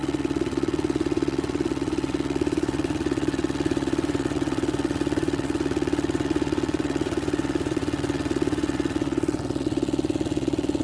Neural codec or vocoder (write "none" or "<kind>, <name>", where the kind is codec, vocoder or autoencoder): vocoder, WaveNeXt